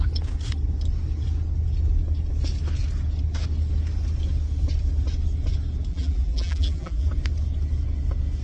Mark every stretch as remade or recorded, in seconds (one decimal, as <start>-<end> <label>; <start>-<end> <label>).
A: 0.0-5.9 recorded; 5.9-7.1 remade; 7.1-8.4 recorded